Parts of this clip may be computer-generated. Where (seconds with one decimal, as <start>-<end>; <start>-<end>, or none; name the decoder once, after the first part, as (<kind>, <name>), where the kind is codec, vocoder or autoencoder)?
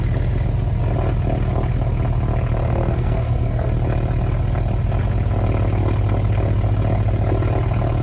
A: 2.6-3.7 (codec, SNAC)